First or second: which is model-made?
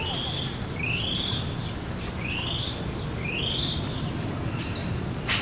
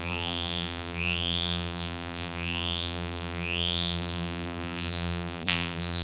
second